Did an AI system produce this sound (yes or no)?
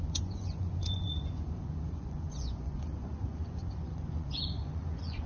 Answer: yes